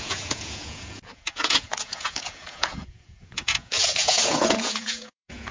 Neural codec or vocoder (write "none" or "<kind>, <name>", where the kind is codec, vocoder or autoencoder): vocoder, Vocos